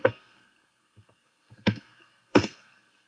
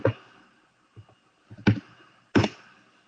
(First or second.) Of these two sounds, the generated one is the first